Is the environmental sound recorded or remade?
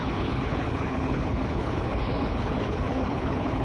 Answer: remade